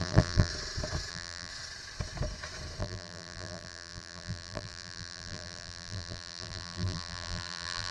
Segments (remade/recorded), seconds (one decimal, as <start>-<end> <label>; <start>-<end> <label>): 0.0-0.5 remade; 0.5-1.1 recorded; 1.1-1.5 remade; 1.5-2.8 recorded; 2.8-7.9 remade